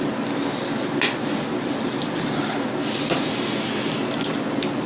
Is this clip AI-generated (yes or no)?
no